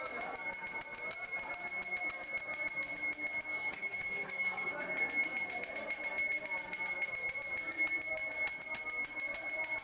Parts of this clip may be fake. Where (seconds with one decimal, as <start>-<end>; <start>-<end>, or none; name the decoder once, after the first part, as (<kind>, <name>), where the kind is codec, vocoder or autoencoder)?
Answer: 3.5-4.7 (codec, DAC)